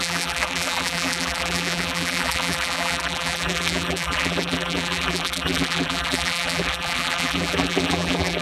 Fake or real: fake